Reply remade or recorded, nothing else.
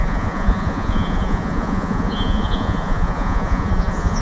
remade